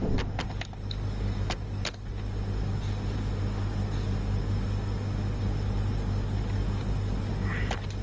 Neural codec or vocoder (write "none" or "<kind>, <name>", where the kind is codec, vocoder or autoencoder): none